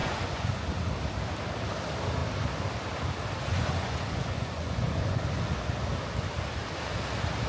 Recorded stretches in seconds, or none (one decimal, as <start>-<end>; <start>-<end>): 0.7-3.5; 5.2-7.5